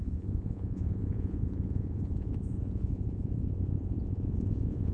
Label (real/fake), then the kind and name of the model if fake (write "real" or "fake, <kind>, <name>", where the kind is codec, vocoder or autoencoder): fake, vocoder, Vocos